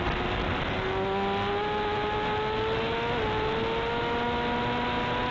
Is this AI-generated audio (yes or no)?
no